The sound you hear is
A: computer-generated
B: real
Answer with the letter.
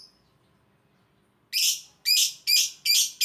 B